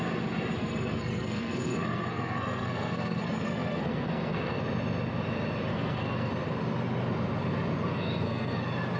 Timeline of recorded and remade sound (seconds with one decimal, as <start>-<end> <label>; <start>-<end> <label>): 0.0-0.6 recorded; 0.6-4.6 remade; 4.6-5.7 recorded; 5.7-6.3 remade; 6.3-7.9 recorded; 7.9-8.6 remade; 8.6-9.0 recorded